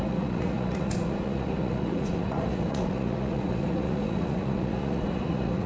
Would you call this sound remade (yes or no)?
yes